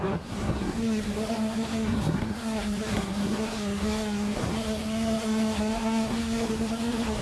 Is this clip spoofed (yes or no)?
yes